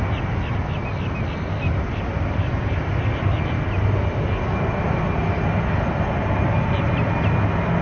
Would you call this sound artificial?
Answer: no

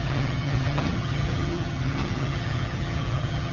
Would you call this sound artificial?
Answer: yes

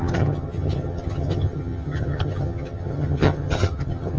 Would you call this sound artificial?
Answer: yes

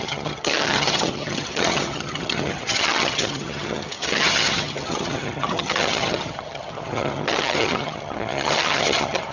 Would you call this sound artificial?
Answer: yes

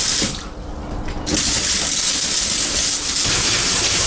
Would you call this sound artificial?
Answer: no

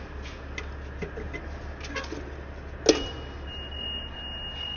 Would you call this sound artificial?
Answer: no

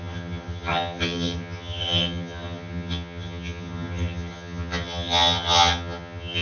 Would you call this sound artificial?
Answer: yes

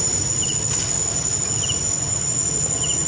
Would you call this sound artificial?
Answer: no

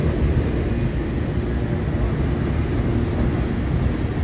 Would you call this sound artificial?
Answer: no